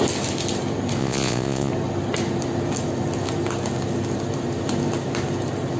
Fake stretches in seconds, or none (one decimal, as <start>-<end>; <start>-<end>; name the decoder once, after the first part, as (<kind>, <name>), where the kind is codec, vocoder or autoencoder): 1.0-1.7 (vocoder, Vocos)